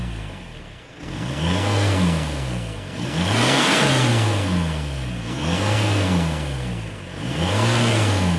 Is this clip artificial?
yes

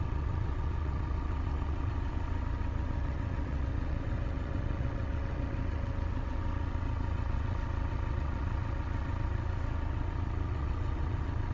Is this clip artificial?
yes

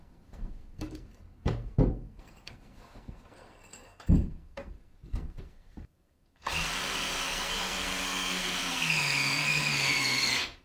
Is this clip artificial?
yes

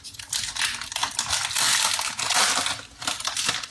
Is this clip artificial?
no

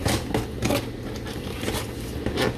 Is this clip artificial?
no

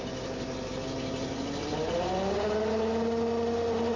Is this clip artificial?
no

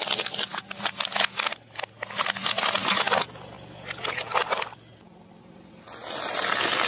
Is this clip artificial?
no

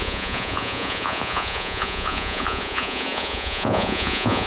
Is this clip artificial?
yes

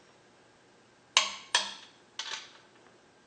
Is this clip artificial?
no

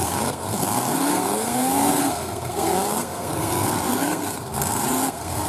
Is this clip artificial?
yes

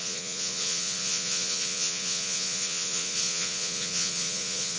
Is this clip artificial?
yes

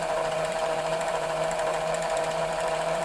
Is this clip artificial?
yes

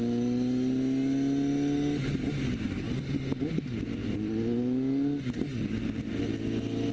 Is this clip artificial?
no